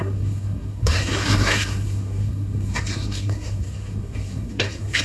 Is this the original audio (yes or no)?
no